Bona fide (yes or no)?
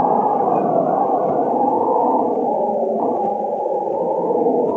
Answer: yes